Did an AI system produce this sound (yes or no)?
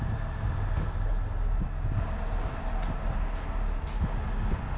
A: no